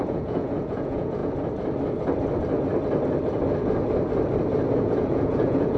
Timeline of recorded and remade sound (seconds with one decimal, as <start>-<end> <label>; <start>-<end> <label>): 0.0-1.2 remade; 1.2-4.7 recorded; 4.7-5.8 remade